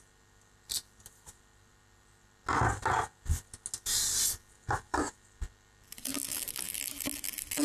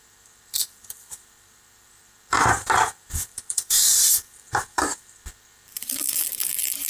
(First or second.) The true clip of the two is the first